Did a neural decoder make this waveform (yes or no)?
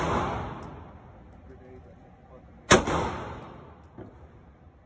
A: no